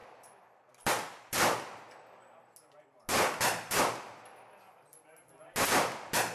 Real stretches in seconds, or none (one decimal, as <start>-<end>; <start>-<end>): 0.0-6.3